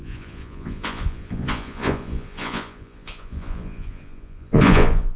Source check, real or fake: fake